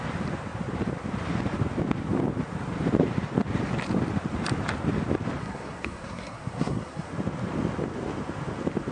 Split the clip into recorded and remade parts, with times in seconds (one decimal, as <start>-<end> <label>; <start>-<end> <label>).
0.0-5.4 recorded; 5.4-7.1 remade; 7.1-8.9 recorded